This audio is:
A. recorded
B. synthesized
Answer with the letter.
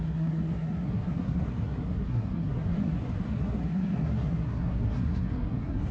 B